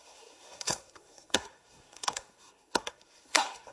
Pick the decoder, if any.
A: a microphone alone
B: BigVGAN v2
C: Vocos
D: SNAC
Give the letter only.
D